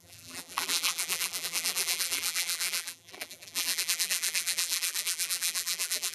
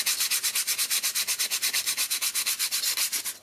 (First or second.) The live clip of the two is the second